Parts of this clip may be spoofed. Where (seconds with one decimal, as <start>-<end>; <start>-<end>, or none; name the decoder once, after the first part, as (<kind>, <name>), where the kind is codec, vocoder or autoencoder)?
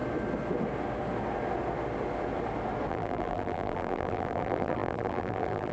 2.9-5.7 (vocoder, BigVGAN v2)